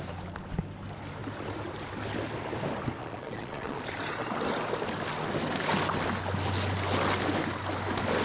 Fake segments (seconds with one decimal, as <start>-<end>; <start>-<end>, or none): 3.0-3.8